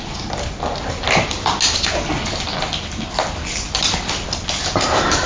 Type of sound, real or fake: real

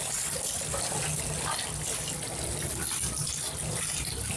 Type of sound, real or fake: real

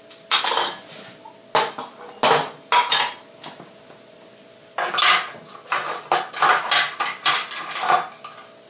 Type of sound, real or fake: real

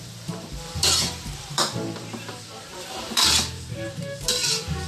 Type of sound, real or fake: fake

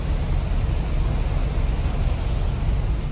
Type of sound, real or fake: real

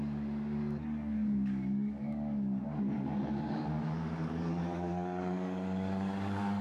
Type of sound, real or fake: fake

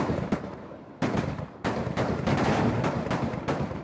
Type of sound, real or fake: fake